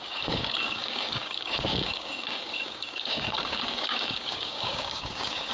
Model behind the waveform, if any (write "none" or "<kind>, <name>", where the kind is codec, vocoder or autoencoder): codec, DAC